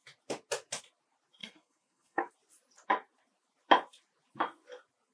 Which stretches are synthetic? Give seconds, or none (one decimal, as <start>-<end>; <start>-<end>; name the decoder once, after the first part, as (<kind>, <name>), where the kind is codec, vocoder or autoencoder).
1.4-2.3 (codec, SNAC)